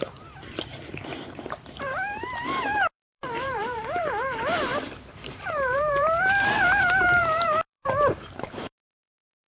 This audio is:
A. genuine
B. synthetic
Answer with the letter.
B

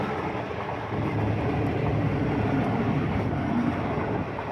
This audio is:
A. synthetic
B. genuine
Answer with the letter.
B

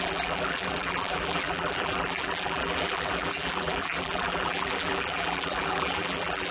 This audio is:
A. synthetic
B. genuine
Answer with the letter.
A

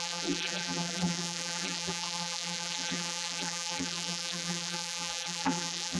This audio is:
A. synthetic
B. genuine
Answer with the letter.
A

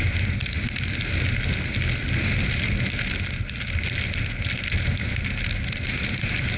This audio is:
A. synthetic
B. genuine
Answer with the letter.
B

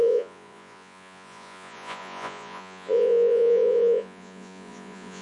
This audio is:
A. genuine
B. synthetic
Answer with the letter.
B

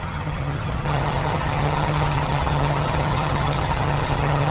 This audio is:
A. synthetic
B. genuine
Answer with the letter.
A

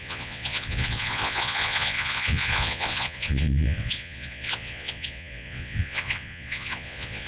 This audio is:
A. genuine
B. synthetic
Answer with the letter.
B